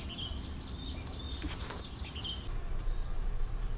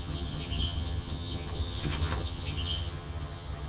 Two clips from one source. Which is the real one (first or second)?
first